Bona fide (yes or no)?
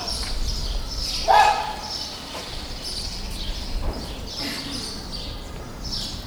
no